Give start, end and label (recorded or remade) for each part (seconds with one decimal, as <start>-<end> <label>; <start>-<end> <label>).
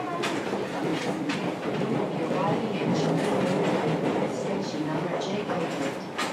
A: 0.0-2.9 recorded; 2.9-3.4 remade; 3.4-4.4 recorded; 4.4-5.6 remade; 5.6-6.3 recorded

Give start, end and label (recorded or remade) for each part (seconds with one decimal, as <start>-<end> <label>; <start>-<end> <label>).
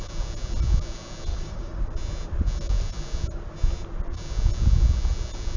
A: 0.0-1.3 recorded; 1.3-1.8 remade; 1.8-5.6 recorded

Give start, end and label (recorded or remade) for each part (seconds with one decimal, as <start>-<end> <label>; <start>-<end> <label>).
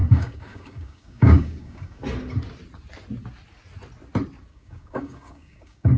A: 0.0-2.0 remade; 2.0-4.5 recorded; 4.5-6.0 remade